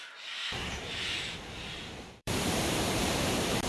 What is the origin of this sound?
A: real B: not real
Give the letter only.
B